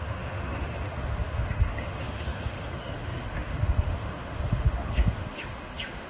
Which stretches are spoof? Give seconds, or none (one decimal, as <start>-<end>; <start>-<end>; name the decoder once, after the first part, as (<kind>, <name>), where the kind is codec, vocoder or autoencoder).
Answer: 0.0-6.1 (autoencoder, DAC-VAE)